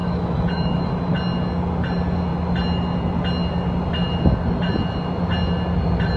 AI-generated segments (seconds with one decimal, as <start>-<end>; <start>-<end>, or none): 0.0-0.9